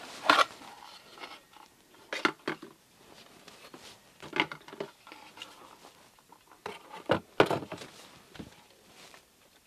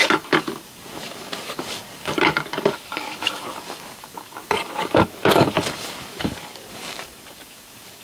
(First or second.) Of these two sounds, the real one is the first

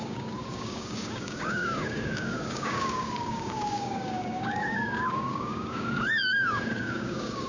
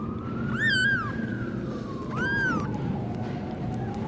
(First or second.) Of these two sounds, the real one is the second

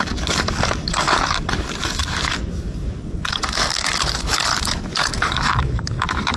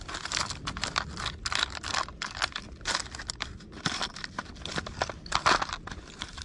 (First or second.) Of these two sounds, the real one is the second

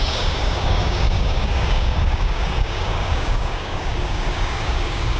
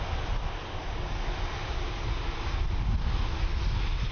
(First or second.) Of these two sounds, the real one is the second